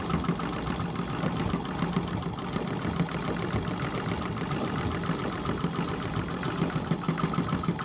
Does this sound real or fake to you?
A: real